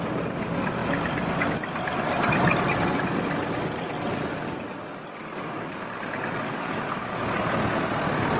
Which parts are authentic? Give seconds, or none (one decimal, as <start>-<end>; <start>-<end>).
0.0-5.2; 7.5-8.4